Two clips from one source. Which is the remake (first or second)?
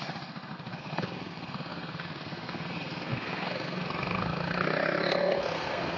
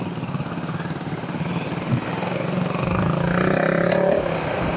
first